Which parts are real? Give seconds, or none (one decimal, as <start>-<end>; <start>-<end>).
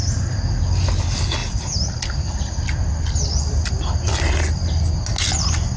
0.0-1.4; 3.7-5.8